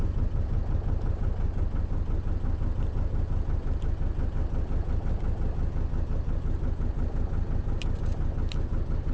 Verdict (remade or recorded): recorded